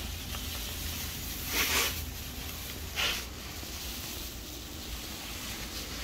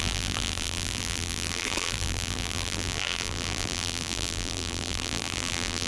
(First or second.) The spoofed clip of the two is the second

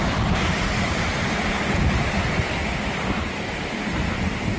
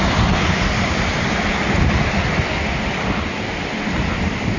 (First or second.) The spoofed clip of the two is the first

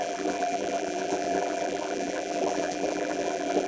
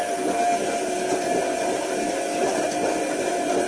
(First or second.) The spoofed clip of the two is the first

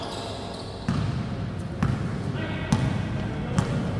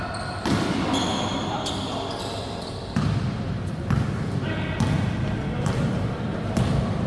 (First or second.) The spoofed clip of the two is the second